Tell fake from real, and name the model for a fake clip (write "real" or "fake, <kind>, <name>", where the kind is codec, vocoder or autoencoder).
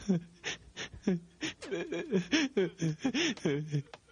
real